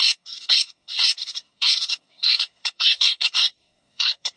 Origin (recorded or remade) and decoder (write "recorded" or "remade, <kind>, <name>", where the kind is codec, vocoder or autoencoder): remade, codec, SNAC